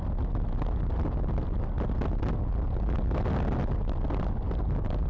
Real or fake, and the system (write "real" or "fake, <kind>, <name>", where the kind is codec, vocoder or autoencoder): real